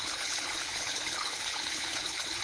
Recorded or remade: remade